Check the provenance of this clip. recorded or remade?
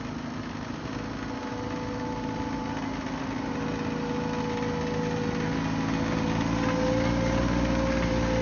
recorded